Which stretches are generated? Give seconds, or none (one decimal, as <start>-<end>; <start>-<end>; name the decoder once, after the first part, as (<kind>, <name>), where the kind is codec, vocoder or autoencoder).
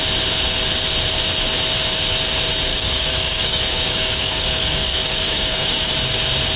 2.7-5.9 (codec, DAC)